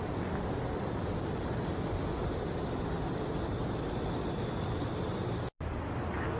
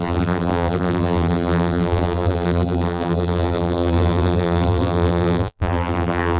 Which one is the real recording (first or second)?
first